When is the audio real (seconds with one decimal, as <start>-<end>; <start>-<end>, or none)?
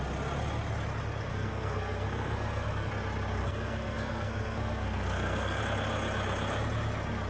0.0-1.3; 2.9-3.4; 5.6-7.3